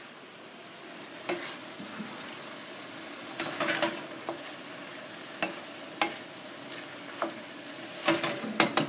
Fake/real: real